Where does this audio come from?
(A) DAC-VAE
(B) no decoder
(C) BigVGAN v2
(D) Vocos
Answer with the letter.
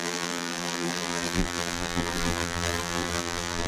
C